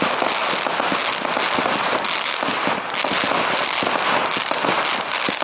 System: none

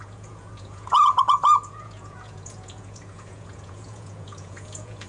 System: vocoder, Vocos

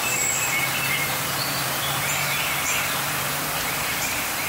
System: vocoder, BigVGAN v2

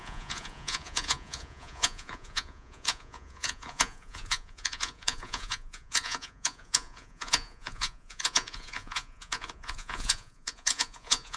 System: vocoder, Vocos